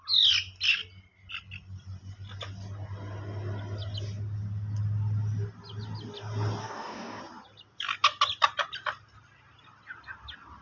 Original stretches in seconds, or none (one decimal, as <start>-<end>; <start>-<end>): 0.0-6.6; 7.2-10.6